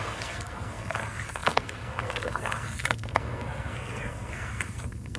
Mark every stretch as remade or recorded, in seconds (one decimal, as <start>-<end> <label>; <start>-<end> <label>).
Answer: 0.0-5.2 remade